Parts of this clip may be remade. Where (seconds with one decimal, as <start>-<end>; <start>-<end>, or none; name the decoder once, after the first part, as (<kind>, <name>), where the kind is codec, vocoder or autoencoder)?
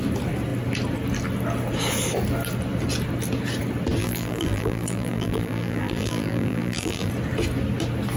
4.0-7.1 (vocoder, BigVGAN v2)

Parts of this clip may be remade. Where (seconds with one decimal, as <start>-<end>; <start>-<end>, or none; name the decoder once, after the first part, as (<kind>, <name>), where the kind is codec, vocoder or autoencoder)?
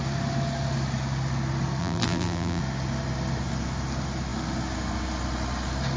1.8-2.6 (vocoder, BigVGAN v2)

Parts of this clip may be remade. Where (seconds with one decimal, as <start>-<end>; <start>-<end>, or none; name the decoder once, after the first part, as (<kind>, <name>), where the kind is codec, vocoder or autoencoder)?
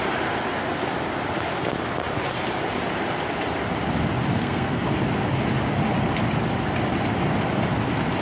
4.3-4.8 (codec, SNAC)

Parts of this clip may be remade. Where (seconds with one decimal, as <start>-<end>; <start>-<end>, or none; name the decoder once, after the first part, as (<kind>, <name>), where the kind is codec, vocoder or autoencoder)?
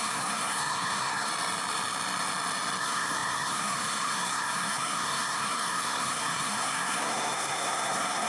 0.0-1.3 (codec, SNAC); 2.8-8.3